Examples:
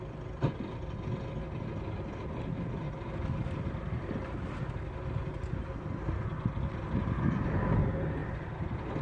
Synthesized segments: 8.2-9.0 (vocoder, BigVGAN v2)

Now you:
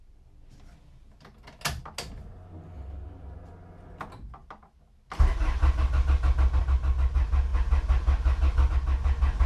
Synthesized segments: none

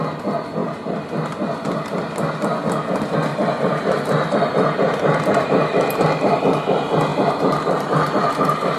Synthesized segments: 0.6-1.1 (vocoder, BigVGAN v2); 3.3-6.4; 7.1-8.8

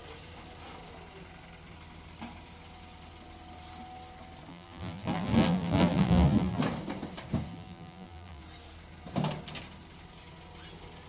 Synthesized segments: 4.5-6.6 (vocoder, BigVGAN v2); 7.5-8.4

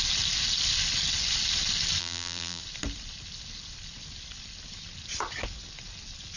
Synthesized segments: 2.0-2.6 (vocoder, BigVGAN v2)

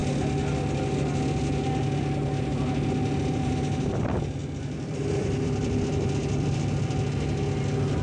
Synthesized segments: 2.5-3.5 (vocoder, BigVGAN v2); 4.4-7.0